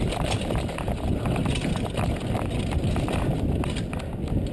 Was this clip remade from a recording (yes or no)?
no